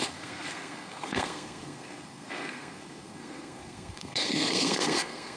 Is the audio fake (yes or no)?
yes